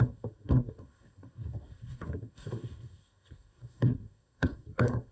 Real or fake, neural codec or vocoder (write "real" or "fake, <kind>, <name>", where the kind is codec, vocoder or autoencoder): fake, codec, SNAC